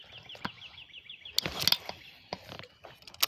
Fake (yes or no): no